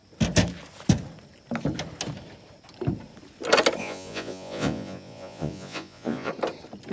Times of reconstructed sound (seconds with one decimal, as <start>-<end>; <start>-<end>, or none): 3.8-6.3